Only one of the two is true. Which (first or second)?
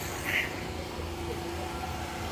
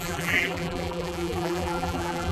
first